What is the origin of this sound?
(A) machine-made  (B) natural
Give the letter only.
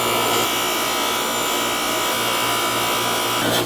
B